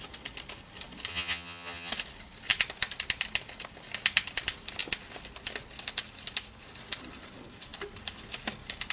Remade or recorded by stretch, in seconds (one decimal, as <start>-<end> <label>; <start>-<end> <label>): 0.0-1.1 recorded; 1.1-1.9 remade; 1.9-8.9 recorded